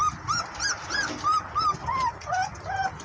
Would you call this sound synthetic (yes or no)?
no